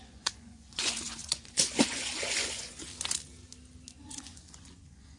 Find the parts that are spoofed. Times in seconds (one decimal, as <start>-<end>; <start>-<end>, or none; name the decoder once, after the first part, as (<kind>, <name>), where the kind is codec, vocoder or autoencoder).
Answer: 0.0-2.9 (vocoder, Vocos); 4.1-5.2